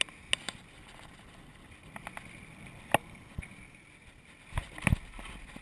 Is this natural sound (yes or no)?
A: yes